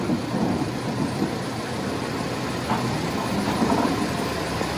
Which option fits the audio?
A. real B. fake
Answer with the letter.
A